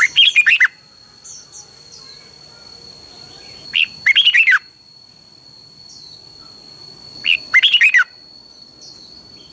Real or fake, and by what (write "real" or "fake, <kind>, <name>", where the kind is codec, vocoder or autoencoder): real